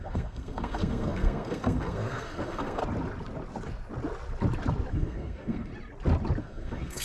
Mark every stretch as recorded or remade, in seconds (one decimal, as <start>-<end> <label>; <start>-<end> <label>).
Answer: 0.0-2.8 remade; 2.8-4.9 recorded; 4.9-5.7 remade; 5.7-6.4 recorded; 6.4-7.0 remade